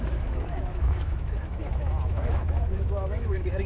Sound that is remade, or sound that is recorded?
remade